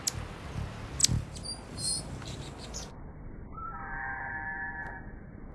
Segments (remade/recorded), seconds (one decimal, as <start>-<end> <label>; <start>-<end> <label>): 0.0-1.0 recorded; 1.0-4.3 remade; 4.3-5.5 recorded